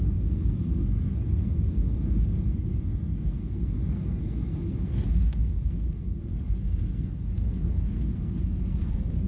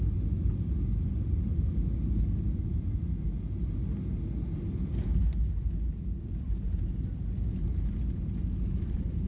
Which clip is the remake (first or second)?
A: first